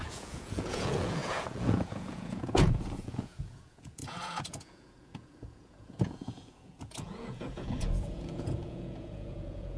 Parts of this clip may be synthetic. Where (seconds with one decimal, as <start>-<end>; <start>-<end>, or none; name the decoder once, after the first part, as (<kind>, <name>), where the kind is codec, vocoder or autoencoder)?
0.0-9.8 (vocoder, Vocos)